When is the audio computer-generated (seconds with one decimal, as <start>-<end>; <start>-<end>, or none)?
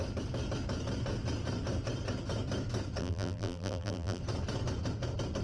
3.0-4.2